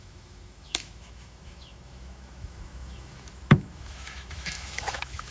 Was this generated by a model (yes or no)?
yes